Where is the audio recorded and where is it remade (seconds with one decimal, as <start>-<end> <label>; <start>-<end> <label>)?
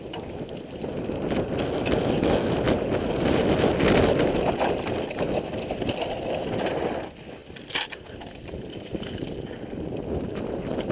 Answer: 0.0-10.9 recorded